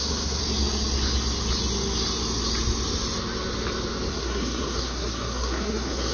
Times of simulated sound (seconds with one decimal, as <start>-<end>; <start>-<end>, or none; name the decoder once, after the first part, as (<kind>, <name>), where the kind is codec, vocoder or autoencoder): 0.0-0.4 (codec, SNAC); 4.1-6.1